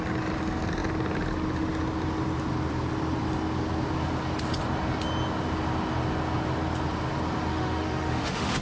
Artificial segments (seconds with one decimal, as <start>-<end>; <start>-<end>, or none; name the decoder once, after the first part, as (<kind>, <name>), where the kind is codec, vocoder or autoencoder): 7.5-8.6 (autoencoder, DAC-VAE)